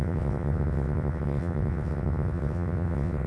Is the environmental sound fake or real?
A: fake